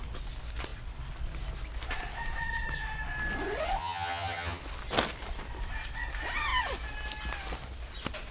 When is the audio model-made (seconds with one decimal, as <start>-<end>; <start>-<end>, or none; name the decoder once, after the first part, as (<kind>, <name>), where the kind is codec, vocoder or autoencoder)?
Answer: 3.8-4.6 (vocoder, HiFi-GAN)